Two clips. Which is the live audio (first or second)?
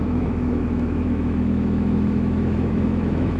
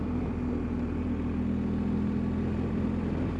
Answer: second